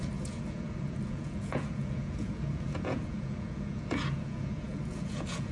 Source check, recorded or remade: remade